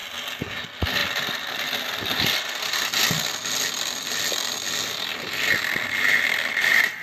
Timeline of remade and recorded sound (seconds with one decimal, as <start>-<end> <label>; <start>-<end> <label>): 0.0-7.0 recorded